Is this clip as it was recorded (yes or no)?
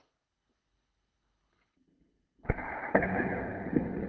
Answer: no